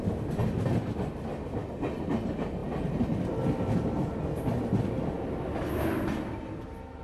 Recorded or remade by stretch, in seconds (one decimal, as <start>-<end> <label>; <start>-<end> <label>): 0.0-7.0 recorded